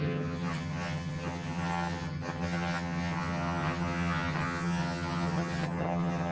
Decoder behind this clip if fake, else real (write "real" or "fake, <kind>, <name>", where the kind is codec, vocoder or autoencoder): fake, vocoder, HiFi-GAN